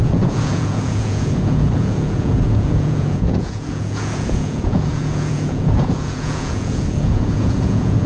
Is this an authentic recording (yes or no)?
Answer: no